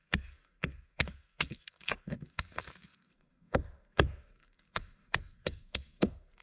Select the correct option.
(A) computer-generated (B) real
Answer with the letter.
A